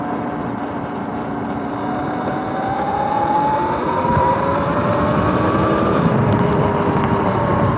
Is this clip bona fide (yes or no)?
no